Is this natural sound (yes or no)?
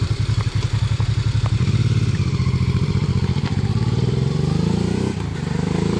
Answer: no